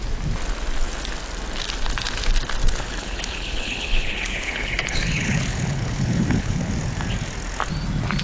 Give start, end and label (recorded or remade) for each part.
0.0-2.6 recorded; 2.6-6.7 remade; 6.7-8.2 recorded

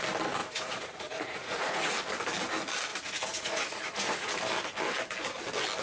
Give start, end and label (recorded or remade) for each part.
0.0-0.4 recorded; 0.4-1.9 remade; 1.9-2.9 recorded; 2.9-4.3 remade; 4.3-5.8 recorded

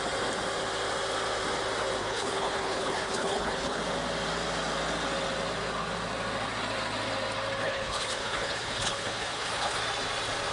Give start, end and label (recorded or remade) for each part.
0.0-2.0 recorded; 2.0-3.8 remade; 3.8-7.6 recorded; 7.6-9.8 remade; 9.8-10.5 recorded

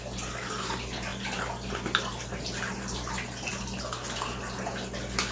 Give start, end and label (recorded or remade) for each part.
0.0-5.3 recorded

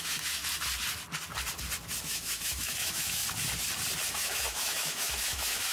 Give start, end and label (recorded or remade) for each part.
0.0-0.4 remade; 0.4-2.0 recorded; 2.0-3.2 remade; 3.2-4.1 recorded; 4.1-5.7 remade

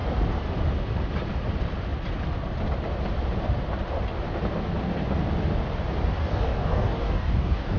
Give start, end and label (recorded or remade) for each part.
0.0-6.2 recorded; 6.2-7.8 remade

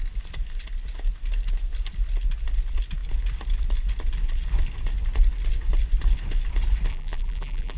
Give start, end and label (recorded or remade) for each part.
0.0-6.9 recorded; 6.9-7.8 remade

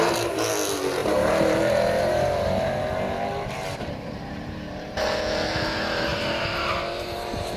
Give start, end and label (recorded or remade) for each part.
0.0-1.0 recorded; 1.0-5.0 remade; 5.0-6.1 recorded; 6.1-7.6 remade